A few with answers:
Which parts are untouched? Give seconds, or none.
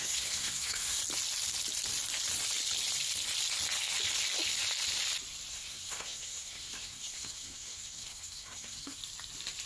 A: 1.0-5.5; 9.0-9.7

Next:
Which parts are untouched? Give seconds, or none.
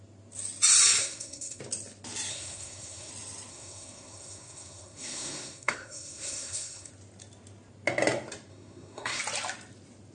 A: 0.0-1.0; 1.6-2.3; 3.1-3.5; 6.9-8.5; 9.2-10.1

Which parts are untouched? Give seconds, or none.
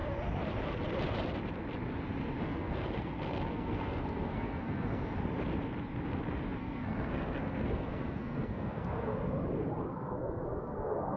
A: 0.0-2.4; 5.1-6.6; 9.1-9.9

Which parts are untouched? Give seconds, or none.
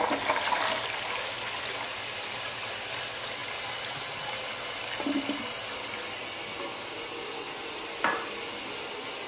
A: 0.0-9.3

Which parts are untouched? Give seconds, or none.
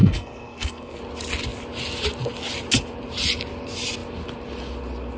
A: 1.0-5.2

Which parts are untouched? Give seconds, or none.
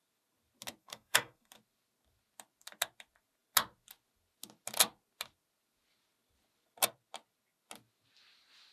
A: 0.0-0.8; 1.5-8.7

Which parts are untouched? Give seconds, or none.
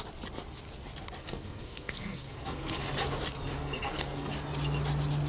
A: 0.0-1.2; 2.8-3.6; 4.3-5.3